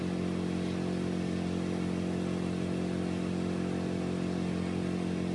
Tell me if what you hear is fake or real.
real